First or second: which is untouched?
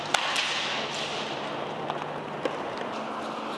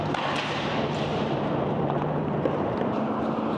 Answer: first